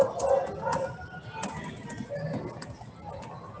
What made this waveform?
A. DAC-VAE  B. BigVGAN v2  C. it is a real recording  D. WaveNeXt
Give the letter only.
C